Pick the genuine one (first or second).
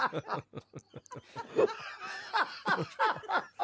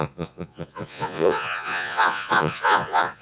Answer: first